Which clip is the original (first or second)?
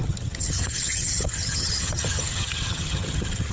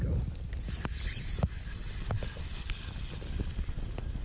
second